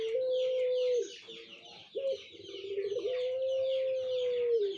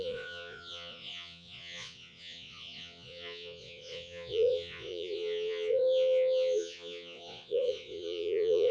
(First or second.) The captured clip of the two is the first